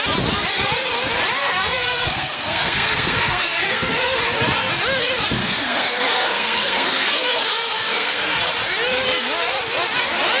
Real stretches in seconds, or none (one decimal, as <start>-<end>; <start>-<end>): 0.0-1.4; 4.2-5.4; 8.3-10.4